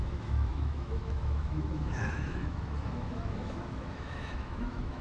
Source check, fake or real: fake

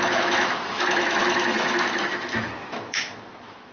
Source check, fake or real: fake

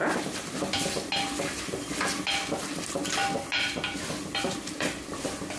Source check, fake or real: real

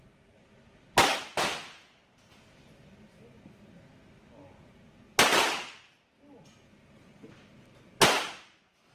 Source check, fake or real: real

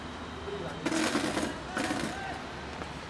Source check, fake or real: real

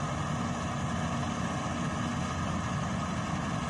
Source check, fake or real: real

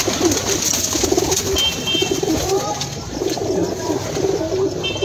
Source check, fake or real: real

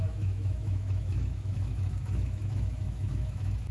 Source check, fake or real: fake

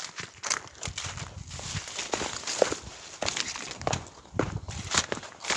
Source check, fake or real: real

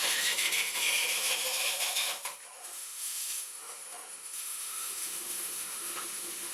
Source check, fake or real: fake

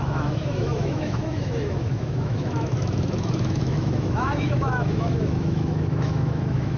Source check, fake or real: fake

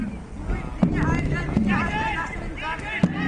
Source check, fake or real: real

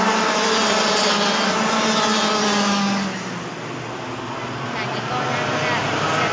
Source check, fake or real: real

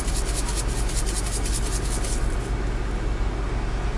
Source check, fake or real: real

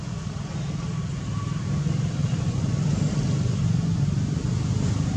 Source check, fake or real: real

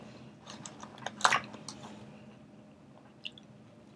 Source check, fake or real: real